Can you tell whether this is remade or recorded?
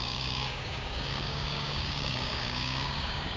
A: remade